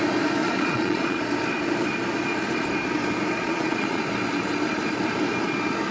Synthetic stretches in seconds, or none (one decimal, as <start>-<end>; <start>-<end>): 0.4-1.2; 3.4-4.0